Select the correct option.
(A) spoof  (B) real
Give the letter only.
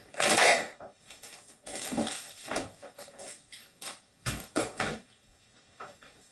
A